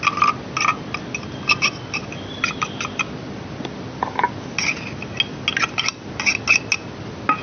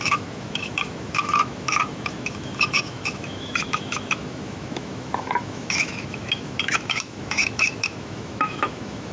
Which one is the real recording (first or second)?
first